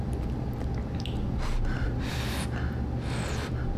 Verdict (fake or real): real